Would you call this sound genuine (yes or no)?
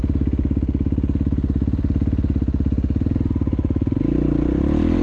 yes